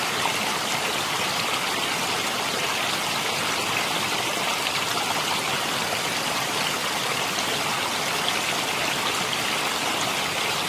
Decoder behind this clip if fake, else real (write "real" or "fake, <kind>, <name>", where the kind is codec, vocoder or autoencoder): real